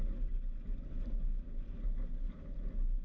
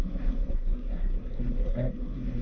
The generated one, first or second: second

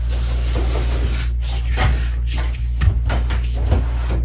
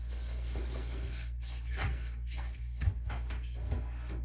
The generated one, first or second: second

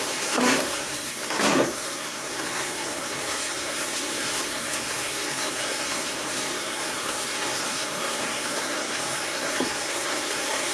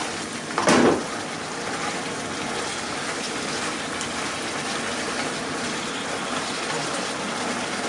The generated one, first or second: first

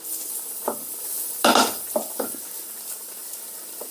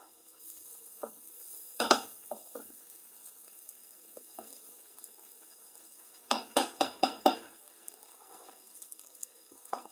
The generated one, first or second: second